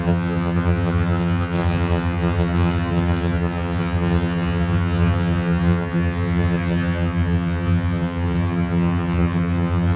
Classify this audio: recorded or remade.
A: remade